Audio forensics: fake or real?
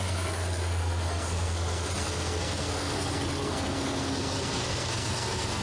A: fake